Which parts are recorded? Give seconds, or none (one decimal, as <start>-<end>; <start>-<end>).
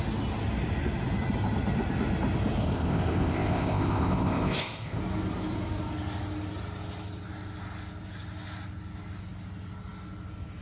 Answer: 0.0-2.6; 5.0-10.6